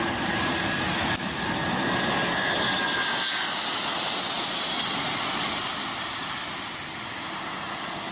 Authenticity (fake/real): real